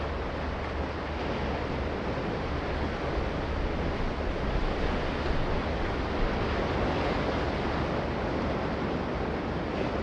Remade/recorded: recorded